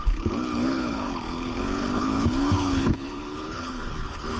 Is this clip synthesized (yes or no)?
yes